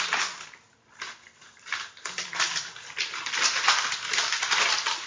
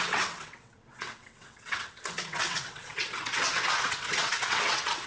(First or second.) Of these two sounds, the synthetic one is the second